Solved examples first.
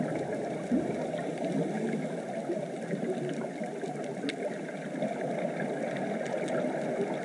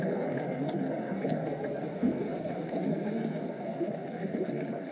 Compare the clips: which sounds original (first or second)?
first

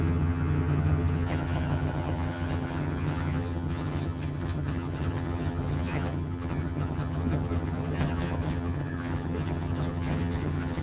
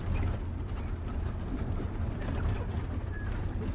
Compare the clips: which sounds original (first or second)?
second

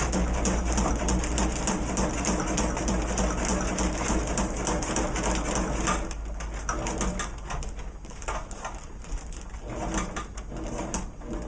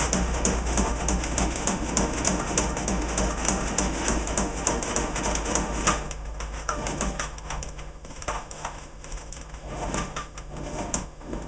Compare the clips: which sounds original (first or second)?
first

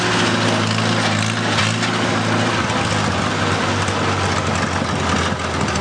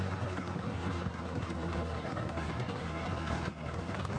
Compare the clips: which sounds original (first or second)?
first